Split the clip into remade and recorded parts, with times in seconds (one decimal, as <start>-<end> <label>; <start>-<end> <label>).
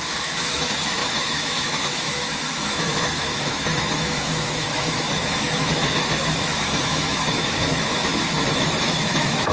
0.0-9.5 remade